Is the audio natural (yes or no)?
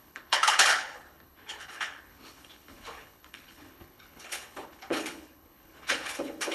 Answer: no